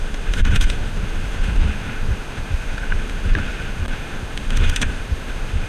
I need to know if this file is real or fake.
fake